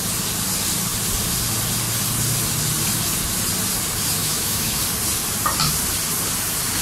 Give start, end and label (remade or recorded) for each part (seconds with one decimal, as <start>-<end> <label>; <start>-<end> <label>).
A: 0.0-4.2 recorded; 4.2-4.8 remade; 4.8-6.8 recorded